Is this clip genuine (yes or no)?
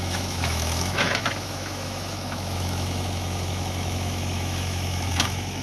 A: no